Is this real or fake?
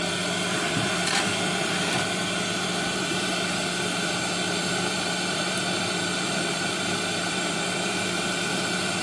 fake